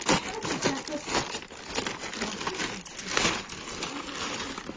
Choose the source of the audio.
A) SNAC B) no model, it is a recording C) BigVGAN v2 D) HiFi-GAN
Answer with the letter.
B